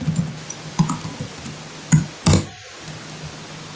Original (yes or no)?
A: yes